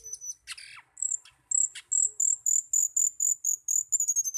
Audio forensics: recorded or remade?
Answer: recorded